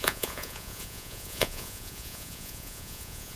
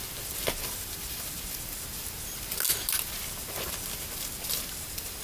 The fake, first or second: first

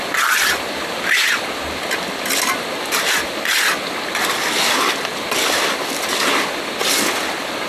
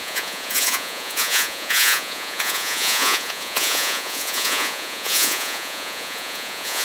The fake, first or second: second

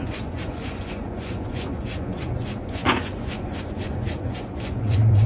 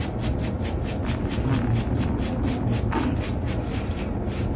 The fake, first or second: first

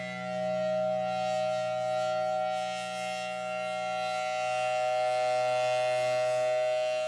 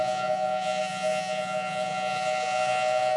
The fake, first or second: second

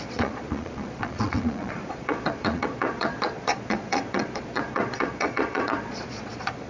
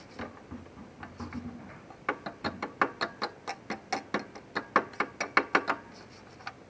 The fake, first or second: first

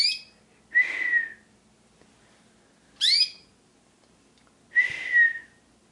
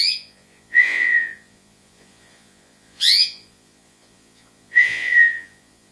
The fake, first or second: second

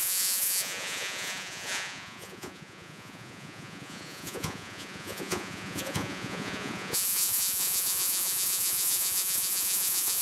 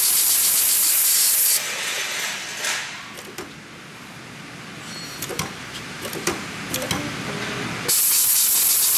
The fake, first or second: first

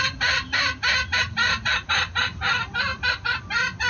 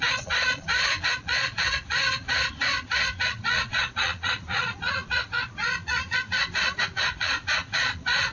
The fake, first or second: second